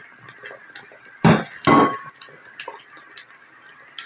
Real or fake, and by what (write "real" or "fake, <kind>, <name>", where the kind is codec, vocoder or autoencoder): real